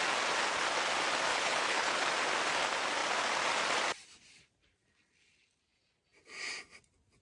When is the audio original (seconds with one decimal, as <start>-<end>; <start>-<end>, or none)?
0.0-1.3; 2.1-7.2